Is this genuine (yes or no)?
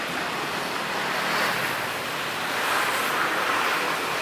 yes